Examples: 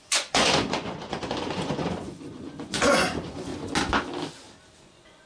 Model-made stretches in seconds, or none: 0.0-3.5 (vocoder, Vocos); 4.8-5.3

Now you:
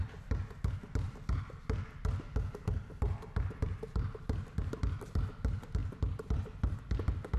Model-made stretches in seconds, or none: 0.8-5.2 (vocoder, BigVGAN v2); 5.8-6.8

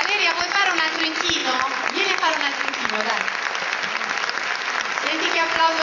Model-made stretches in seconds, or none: none

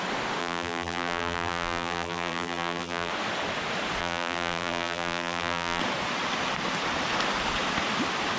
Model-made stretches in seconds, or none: 0.4-3.1 (vocoder, BigVGAN v2); 4.0-5.8